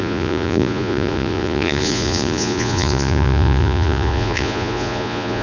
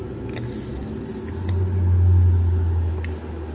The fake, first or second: first